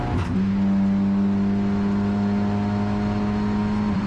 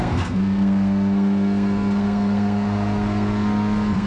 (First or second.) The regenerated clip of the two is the second